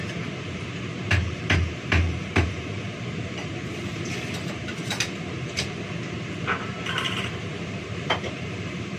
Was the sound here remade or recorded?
remade